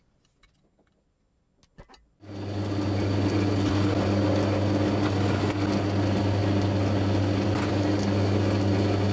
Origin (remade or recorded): recorded